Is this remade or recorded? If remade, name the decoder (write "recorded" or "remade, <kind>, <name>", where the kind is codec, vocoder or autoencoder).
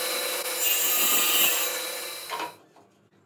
recorded